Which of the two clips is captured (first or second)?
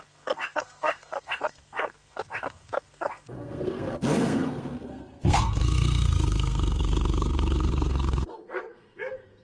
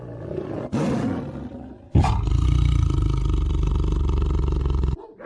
second